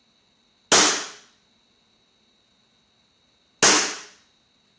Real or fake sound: real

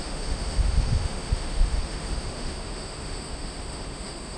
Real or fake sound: fake